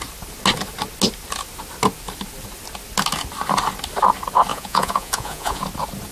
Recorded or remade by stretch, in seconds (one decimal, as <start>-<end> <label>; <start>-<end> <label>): 0.0-4.5 recorded; 4.5-5.6 remade; 5.6-6.1 recorded

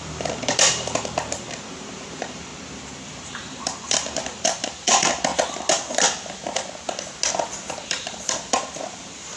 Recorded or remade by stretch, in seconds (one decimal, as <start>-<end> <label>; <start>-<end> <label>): 0.0-2.5 remade; 2.5-3.2 recorded; 3.2-5.3 remade; 5.3-7.6 recorded; 7.6-9.4 remade

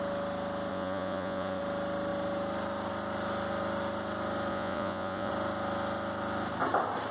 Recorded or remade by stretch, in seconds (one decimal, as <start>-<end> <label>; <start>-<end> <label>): 0.0-0.7 recorded; 0.7-1.6 remade; 1.6-4.5 recorded; 4.5-5.3 remade; 5.3-7.1 recorded

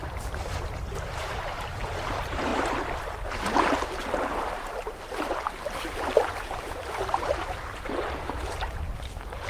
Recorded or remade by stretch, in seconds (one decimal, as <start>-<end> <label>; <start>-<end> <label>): 0.0-2.5 remade; 2.5-3.6 recorded; 3.6-9.5 remade

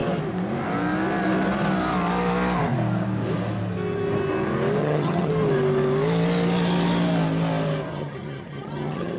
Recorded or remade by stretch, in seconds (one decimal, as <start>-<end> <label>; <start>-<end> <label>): 0.0-4.8 recorded; 4.8-5.3 remade; 5.3-7.9 recorded; 7.9-9.2 remade

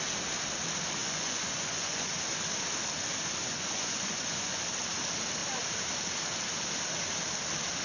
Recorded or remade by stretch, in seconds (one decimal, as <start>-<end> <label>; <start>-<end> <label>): 0.0-1.0 recorded; 1.0-2.1 remade; 2.1-3.5 recorded; 3.5-4.6 remade; 4.6-7.8 recorded

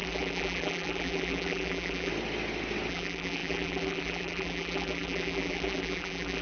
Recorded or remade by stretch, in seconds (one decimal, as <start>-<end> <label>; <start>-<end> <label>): 0.0-2.1 remade; 2.1-2.9 recorded; 2.9-6.4 remade

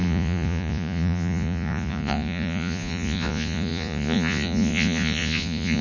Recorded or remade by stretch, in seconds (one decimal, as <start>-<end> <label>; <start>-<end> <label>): 0.0-5.8 remade